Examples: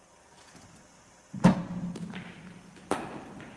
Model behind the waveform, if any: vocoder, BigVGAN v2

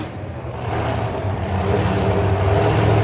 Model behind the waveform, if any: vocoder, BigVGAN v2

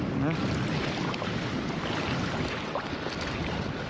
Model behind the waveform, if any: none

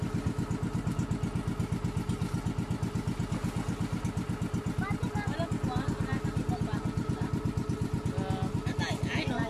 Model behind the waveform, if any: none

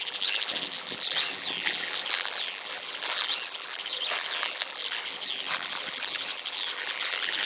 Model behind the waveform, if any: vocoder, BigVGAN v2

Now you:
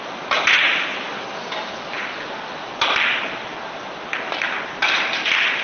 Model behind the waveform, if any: none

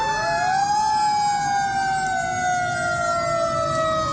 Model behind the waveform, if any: none